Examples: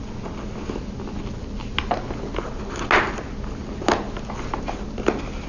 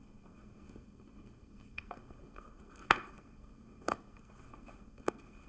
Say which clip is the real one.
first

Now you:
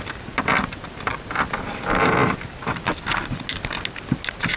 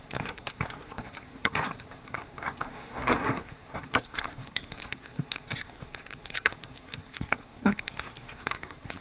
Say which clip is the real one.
first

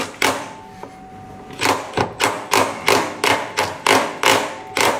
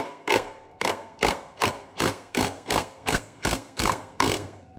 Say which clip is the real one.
first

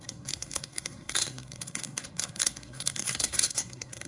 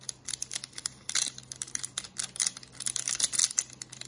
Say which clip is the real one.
second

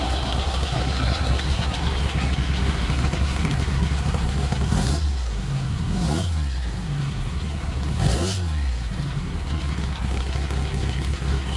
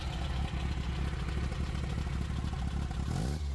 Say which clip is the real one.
second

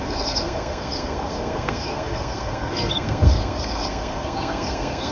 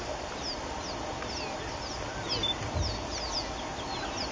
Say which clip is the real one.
second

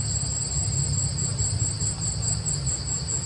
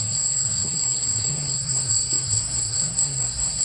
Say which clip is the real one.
first